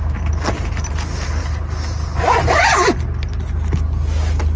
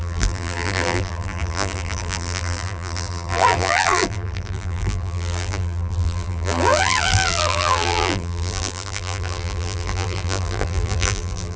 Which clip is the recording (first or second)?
first